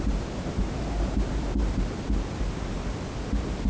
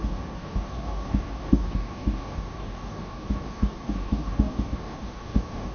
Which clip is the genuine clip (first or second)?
first